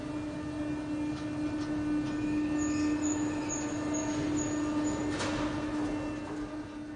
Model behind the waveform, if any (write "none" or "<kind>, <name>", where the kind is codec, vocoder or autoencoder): none